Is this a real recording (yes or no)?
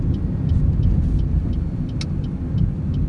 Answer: yes